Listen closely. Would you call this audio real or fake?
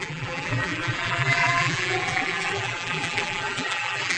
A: fake